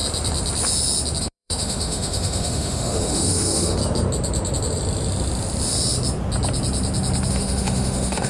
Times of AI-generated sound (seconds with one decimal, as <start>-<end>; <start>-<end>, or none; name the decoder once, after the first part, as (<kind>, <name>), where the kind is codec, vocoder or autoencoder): 1.2-3.8 (autoencoder, DAC-VAE); 7.3-8.3

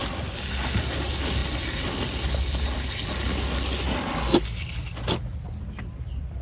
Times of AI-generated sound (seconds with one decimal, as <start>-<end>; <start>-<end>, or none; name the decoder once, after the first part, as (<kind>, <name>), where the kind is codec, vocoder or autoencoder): none

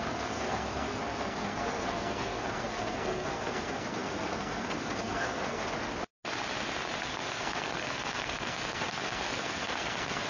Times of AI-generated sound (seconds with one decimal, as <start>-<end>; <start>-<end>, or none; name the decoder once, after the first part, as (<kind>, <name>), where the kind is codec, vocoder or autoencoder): 0.0-5.6 (codec, SNAC); 7.0-10.3

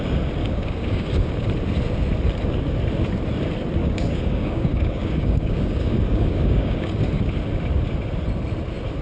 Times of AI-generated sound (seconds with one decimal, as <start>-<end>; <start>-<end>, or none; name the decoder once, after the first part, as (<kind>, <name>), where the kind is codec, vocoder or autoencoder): 0.4-1.3 (codec, DAC); 3.8-7.0

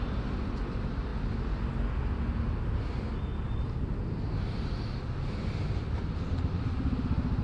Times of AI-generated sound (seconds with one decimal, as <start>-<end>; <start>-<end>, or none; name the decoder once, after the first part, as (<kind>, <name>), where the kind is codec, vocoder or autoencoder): none

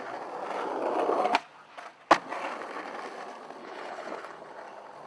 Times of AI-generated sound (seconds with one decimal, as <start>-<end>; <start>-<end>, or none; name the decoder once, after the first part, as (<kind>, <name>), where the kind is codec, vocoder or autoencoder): 3.6-4.5 (codec, HILCodec)